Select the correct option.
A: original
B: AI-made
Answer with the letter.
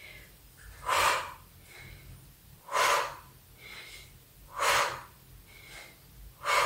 A